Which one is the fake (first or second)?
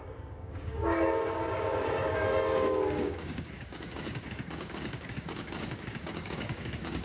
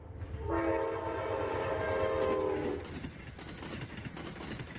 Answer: first